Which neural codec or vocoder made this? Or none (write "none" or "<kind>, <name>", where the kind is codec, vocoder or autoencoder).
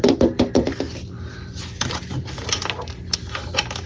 none